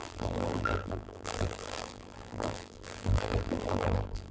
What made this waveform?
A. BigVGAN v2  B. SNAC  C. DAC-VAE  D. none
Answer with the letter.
A